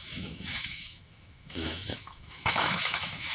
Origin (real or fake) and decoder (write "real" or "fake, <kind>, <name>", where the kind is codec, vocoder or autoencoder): fake, autoencoder, DAC-VAE